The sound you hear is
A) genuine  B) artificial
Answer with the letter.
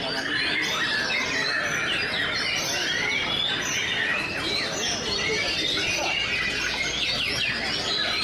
A